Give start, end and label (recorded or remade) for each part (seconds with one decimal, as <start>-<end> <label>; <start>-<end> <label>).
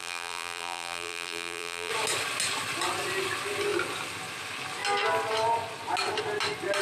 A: 0.0-1.9 remade; 1.9-6.8 recorded